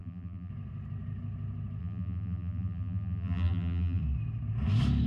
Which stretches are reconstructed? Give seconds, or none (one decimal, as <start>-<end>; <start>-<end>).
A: 0.0-0.5; 1.8-4.0